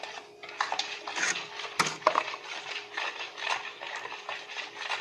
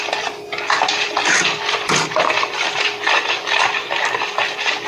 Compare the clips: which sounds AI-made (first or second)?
second